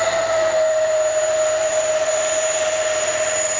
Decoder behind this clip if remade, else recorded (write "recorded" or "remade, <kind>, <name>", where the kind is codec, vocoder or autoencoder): recorded